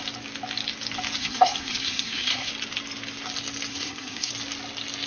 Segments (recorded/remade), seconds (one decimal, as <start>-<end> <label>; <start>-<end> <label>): 0.0-1.2 recorded; 1.2-2.5 remade; 2.5-3.7 recorded; 3.7-4.3 remade; 4.3-5.1 recorded